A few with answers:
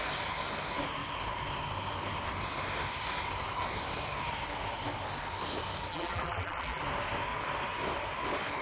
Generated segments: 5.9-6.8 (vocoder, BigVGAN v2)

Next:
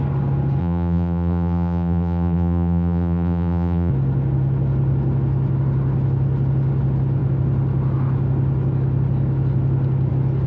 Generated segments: 0.6-3.9 (vocoder, BigVGAN v2)

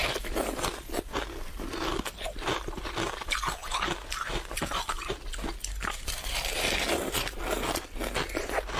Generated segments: none

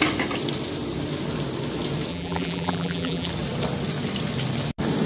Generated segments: 2.1-3.3 (vocoder, BigVGAN v2)

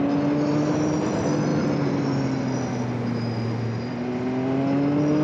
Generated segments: none

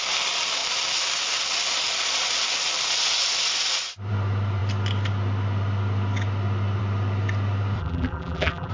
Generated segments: 7.8-8.7 (vocoder, BigVGAN v2)

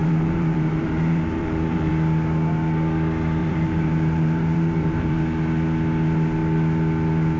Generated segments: 0.0-1.9 (vocoder, BigVGAN v2); 3.4-5.2